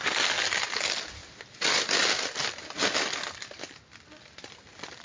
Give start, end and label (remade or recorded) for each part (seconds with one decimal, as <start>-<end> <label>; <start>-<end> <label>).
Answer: 0.0-5.0 recorded